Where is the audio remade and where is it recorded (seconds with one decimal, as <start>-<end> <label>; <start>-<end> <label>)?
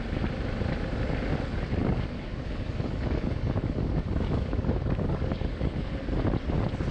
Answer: 0.0-1.8 recorded; 1.8-5.9 remade; 5.9-6.9 recorded